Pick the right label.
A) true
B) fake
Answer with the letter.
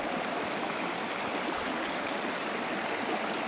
A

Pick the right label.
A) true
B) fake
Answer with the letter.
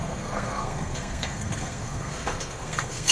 B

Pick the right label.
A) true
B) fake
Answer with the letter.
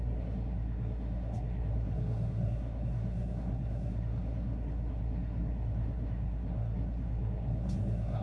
B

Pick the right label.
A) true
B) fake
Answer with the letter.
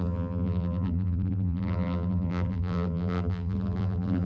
B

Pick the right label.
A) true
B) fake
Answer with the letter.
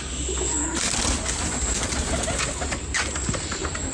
A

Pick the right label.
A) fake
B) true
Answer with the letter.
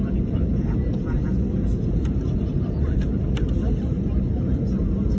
A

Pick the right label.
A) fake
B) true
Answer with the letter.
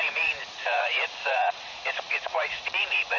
A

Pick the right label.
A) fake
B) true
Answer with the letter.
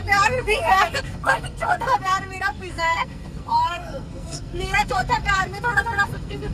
A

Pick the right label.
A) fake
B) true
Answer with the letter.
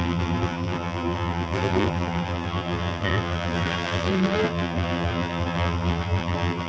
A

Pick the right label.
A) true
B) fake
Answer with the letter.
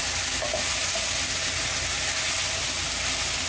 A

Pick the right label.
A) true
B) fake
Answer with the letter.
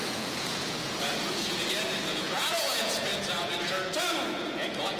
B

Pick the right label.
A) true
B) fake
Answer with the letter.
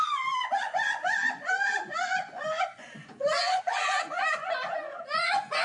B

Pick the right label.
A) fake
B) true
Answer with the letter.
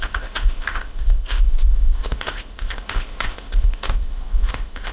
A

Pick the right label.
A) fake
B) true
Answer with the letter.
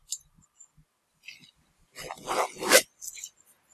B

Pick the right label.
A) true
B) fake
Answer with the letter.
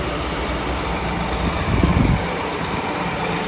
A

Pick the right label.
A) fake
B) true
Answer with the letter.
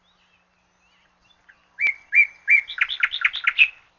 B